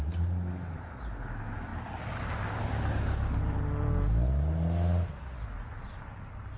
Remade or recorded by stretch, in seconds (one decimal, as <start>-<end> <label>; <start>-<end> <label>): 0.0-6.6 recorded